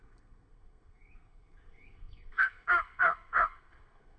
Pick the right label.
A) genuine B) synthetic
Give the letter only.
B